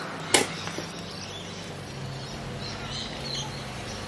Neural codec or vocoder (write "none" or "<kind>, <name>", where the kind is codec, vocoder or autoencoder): none